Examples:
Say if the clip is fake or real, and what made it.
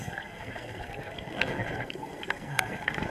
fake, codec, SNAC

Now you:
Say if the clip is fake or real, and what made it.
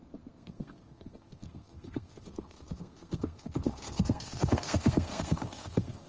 fake, codec, SNAC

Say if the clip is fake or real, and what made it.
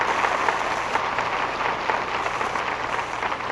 real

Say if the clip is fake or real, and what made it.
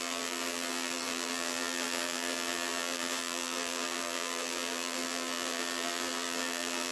fake, vocoder, BigVGAN v2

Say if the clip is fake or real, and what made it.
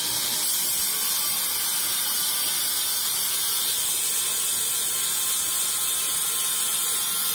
real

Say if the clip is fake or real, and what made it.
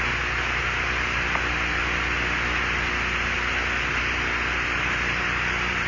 real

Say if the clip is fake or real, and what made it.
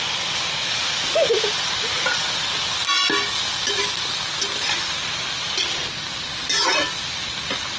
real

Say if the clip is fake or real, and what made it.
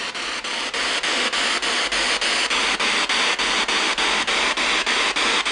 real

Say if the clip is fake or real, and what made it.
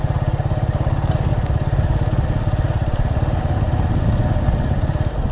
real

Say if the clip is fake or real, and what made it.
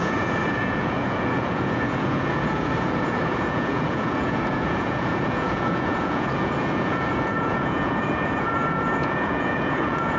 fake, vocoder, Vocos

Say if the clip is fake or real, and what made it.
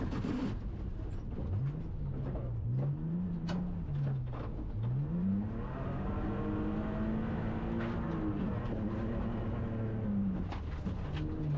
real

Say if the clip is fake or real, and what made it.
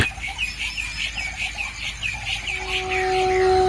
real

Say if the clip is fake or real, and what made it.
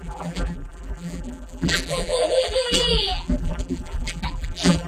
fake, vocoder, BigVGAN v2